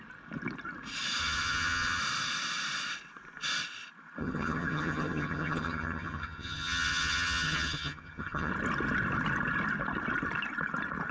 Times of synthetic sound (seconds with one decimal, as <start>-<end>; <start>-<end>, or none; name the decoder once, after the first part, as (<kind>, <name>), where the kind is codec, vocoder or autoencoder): 1.2-2.0 (vocoder, HiFi-GAN); 4.2-8.5